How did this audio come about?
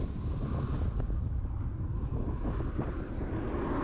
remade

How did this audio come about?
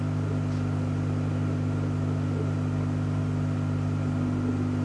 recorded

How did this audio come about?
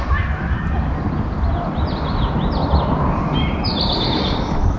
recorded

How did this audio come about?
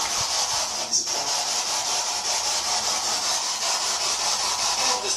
recorded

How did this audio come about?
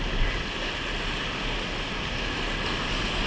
recorded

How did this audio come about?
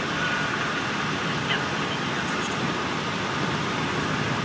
recorded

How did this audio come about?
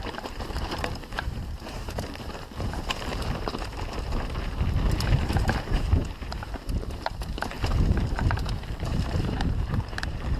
remade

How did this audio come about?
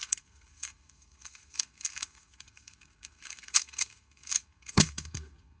remade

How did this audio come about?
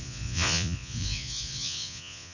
remade